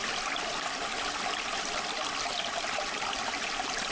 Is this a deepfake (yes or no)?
no